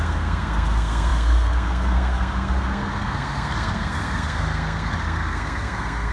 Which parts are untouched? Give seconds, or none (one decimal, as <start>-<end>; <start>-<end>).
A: none